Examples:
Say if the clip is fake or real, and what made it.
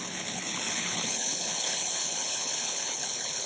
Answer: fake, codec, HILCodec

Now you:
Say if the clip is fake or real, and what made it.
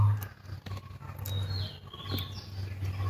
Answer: real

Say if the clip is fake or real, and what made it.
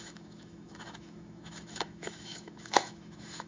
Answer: fake, autoencoder, DAC-VAE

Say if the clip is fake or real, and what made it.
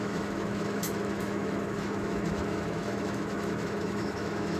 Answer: fake, autoencoder, DAC-VAE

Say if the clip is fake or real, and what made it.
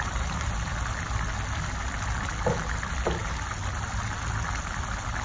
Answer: real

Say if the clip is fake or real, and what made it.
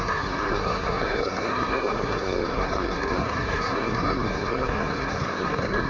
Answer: fake, codec, SNAC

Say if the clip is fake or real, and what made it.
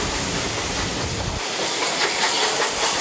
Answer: real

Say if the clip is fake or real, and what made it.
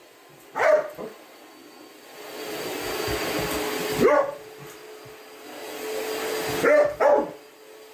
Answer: real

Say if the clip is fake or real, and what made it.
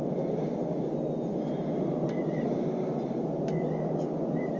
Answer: real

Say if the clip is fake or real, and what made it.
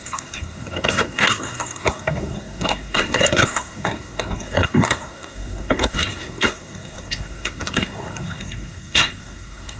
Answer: fake, codec, SNAC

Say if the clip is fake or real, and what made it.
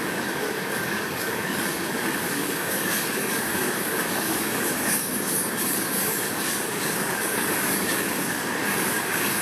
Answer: fake, codec, DAC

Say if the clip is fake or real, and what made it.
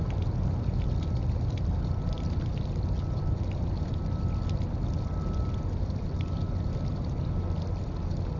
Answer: real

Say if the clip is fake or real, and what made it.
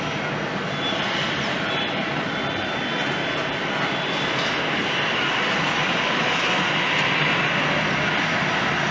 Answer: real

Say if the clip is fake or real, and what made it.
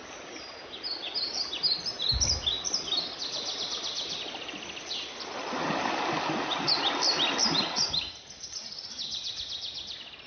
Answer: real